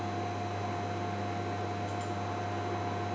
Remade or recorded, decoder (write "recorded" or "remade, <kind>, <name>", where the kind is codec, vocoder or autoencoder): recorded